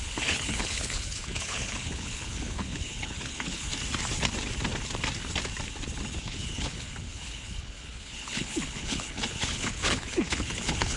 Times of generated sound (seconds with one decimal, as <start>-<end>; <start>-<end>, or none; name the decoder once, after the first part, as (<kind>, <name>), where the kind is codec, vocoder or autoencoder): 0.0-3.7 (codec, HILCodec); 6.2-11.0